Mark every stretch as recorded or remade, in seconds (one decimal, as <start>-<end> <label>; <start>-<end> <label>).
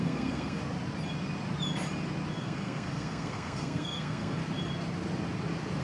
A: 0.0-0.6 remade; 0.6-2.4 recorded; 2.4-4.4 remade; 4.4-5.8 recorded